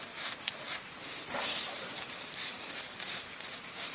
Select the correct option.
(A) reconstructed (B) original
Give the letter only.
A